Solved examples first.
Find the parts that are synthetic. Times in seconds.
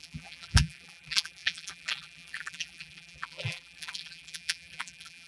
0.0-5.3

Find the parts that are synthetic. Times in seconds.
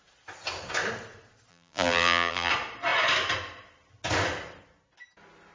1.5-2.5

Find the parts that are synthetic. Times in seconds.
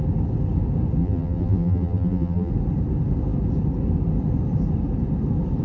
1.0-2.5